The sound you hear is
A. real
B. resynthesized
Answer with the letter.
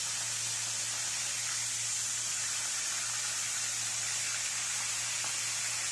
A